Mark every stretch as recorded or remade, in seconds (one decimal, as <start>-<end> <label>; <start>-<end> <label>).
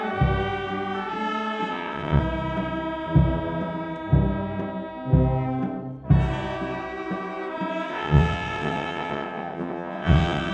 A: 0.0-1.7 recorded; 1.7-2.2 remade; 2.2-7.9 recorded; 7.9-10.5 remade